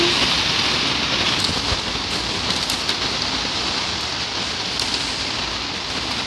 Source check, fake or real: real